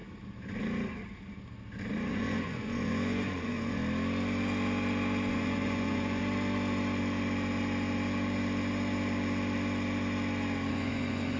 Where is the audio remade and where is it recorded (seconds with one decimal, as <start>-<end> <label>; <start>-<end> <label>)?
0.0-2.1 recorded; 2.1-3.8 remade; 3.8-5.3 recorded; 5.3-6.2 remade; 6.2-10.7 recorded; 10.7-11.4 remade